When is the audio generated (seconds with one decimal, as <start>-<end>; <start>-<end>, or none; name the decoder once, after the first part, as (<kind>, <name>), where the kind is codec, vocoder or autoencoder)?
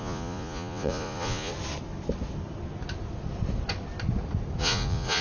0.0-1.5 (vocoder, Vocos); 4.6-5.2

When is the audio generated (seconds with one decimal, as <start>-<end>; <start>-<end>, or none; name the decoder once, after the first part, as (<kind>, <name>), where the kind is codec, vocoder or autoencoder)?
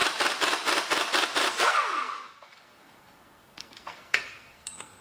1.5-5.0 (codec, SNAC)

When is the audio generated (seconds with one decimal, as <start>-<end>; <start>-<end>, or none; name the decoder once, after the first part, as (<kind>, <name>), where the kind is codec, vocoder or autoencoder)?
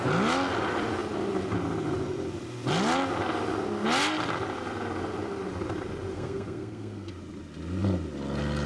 6.1-7.1 (codec, SNAC)